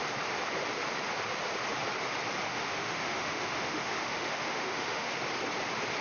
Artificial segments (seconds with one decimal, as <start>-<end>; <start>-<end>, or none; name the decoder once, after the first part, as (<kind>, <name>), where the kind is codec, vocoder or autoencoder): 2.5-5.1 (autoencoder, DAC-VAE)